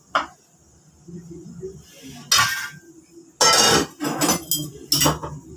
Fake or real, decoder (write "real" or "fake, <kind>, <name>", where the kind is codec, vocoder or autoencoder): real